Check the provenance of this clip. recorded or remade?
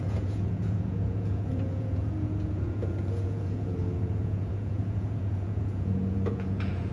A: remade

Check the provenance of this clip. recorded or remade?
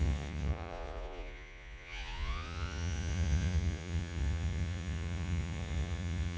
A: remade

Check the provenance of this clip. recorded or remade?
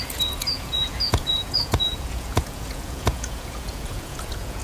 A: remade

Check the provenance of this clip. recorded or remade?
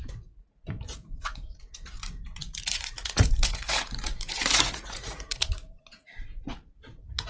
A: remade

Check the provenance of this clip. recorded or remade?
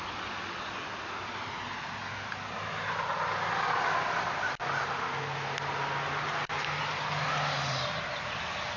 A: recorded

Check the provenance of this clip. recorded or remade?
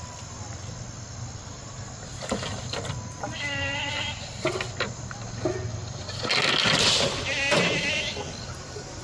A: recorded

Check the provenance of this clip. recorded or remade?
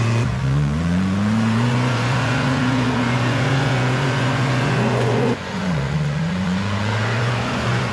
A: remade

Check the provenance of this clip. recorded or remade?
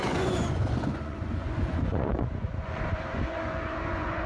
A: remade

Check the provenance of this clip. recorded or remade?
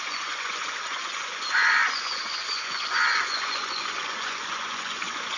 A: remade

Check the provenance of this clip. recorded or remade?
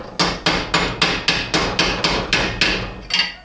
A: recorded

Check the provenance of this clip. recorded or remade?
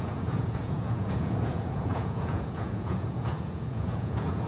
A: remade